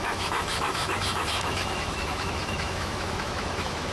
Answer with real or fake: fake